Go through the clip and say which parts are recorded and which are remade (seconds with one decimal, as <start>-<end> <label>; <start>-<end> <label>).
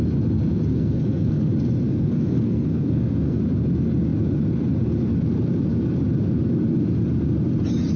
0.0-0.7 recorded; 0.7-1.5 remade; 1.5-1.9 recorded; 1.9-3.4 remade; 3.4-8.0 recorded